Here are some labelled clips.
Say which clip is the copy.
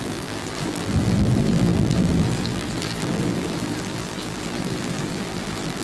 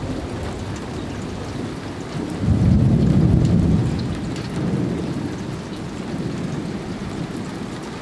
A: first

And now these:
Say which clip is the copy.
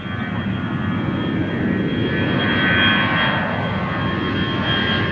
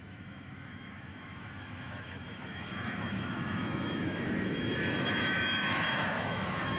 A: second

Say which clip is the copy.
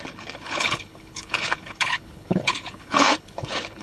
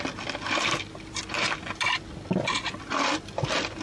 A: first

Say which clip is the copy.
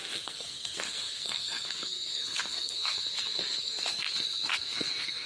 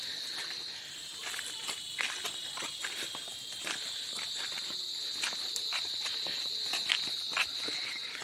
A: first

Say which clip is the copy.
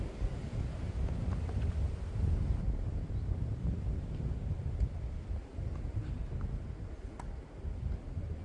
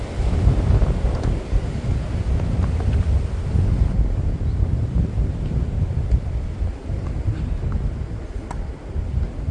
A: second